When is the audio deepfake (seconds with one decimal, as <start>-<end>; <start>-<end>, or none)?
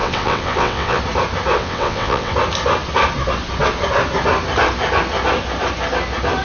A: 0.0-1.0; 1.6-2.3